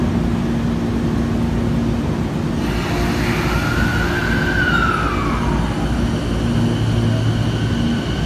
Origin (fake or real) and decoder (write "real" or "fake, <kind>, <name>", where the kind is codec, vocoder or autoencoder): real